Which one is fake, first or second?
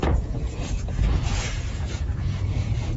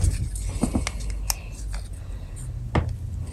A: first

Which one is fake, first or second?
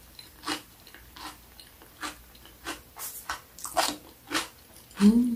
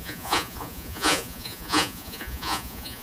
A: second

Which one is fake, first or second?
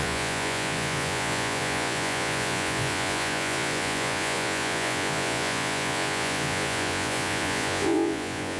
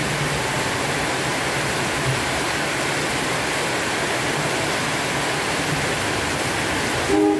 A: first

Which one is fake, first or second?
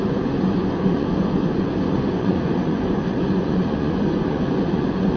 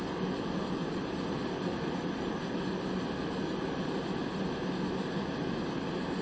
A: first